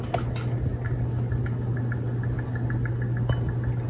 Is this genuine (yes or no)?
yes